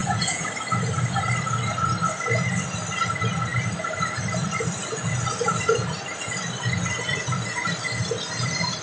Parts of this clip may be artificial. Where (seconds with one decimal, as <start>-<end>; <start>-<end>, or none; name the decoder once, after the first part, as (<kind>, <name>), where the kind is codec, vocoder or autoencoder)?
0.0-0.5 (vocoder, Vocos)